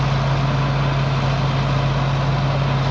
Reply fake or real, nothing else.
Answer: real